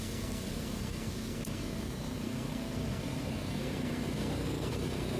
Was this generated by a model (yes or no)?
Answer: yes